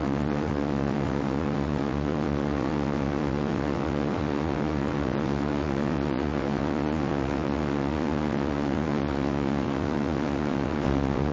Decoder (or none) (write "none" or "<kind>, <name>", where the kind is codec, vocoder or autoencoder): vocoder, WaveNeXt